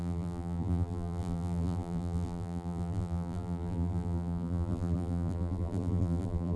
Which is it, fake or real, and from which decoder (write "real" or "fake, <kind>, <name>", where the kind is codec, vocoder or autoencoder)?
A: fake, vocoder, BigVGAN v2